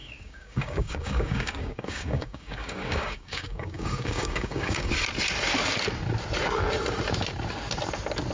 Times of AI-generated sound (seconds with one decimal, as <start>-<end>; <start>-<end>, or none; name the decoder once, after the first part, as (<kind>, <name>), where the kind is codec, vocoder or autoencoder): 0.0-4.9 (codec, DAC)